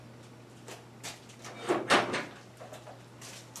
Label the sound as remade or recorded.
recorded